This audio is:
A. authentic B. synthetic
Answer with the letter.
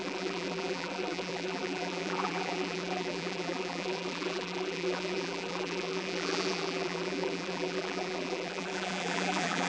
B